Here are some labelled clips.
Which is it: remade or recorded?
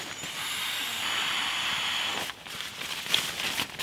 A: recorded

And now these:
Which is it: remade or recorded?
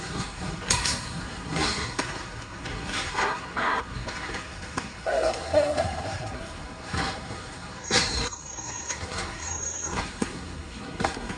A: remade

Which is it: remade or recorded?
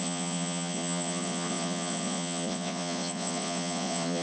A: remade